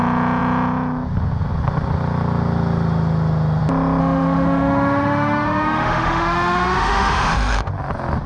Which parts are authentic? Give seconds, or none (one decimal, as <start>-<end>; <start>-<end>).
0.0-4.0; 7.7-8.3